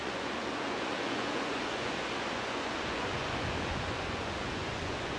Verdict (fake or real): fake